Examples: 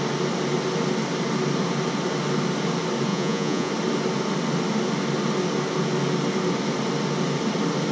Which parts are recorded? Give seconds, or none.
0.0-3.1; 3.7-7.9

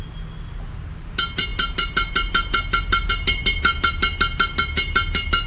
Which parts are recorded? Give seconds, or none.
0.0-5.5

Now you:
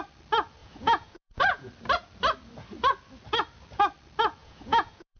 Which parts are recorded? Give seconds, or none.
0.0-0.6; 1.7-4.4

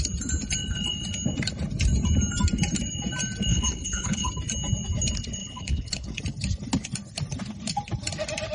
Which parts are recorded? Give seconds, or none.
0.0-3.5; 4.3-5.4; 6.2-8.5

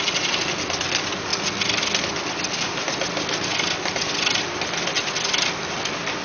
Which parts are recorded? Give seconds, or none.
0.0-6.2